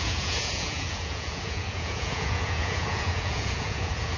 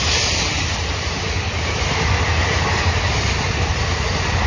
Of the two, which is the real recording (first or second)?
second